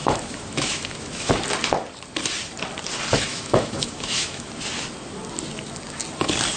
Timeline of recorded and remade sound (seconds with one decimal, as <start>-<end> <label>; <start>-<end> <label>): 0.0-1.3 remade; 1.3-3.3 recorded; 3.3-4.5 remade; 4.5-6.6 recorded